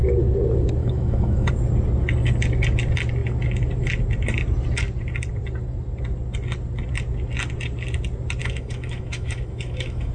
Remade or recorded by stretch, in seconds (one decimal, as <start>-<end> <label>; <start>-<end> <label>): 0.0-0.8 recorded; 0.8-1.5 remade; 1.5-8.4 recorded; 8.4-10.1 remade